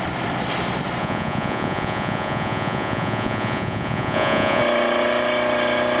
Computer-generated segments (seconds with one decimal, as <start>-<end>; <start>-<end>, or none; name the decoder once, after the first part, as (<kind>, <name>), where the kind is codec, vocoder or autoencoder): 1.0-4.6 (vocoder, Vocos)